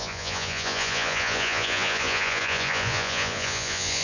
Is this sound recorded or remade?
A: remade